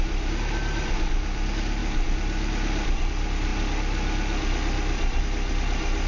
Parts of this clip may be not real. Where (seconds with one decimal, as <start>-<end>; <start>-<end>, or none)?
none